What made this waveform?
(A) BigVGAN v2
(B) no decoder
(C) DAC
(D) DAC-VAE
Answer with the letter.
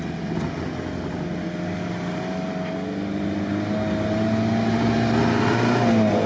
B